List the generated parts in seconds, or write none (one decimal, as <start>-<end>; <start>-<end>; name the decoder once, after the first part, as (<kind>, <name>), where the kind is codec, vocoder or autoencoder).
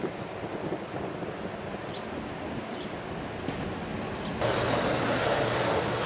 none